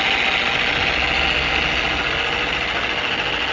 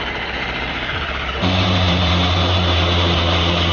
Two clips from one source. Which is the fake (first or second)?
second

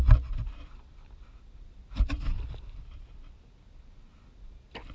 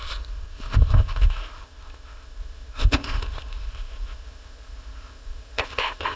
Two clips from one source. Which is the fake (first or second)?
second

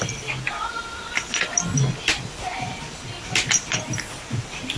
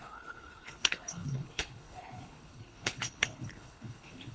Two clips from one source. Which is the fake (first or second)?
second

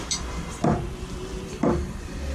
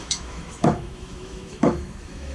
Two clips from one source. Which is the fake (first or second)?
second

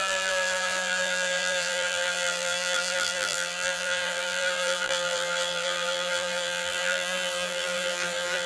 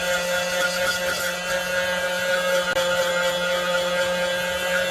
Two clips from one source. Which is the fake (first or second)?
first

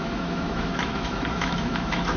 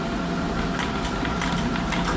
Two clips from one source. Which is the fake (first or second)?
first